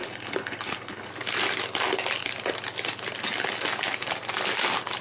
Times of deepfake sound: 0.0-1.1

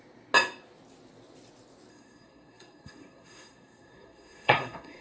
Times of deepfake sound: 1.9-5.0